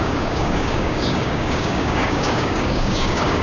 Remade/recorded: remade